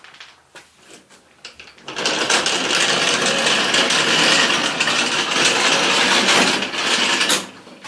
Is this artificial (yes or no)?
no